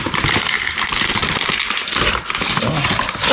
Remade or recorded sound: recorded